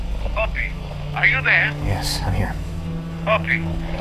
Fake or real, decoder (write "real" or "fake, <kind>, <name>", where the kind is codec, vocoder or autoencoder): fake, codec, DAC